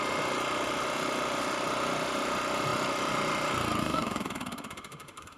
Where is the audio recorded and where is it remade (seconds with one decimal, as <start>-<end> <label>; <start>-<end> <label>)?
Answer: 0.0-3.8 recorded; 3.8-5.4 remade